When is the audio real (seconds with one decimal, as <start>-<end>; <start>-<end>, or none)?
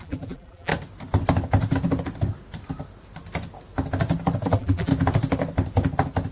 0.7-4.5; 4.9-6.3